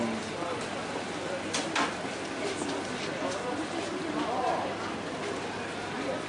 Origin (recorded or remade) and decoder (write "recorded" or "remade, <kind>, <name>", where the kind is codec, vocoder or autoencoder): recorded